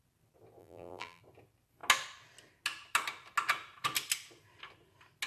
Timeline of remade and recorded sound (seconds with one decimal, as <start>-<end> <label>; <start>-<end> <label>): 0.0-0.6 recorded; 0.6-1.2 remade; 1.2-5.3 recorded